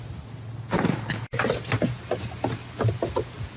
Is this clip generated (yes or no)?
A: no